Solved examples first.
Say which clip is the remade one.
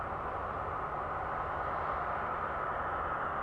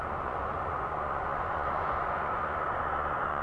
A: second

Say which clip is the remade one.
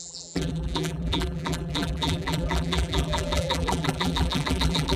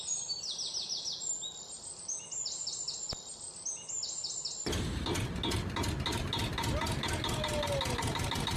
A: first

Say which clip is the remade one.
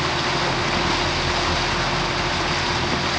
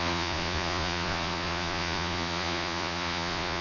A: second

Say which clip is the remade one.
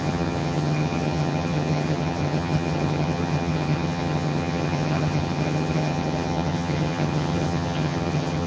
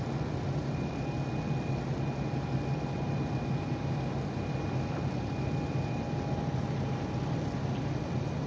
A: first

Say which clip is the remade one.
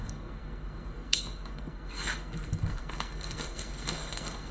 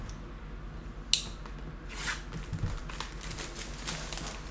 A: first